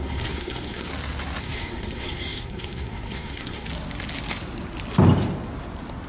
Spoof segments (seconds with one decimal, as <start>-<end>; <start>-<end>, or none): 0.0-0.9; 1.4-3.7